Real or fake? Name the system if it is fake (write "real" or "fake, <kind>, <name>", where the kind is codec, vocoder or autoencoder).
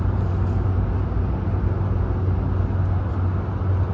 real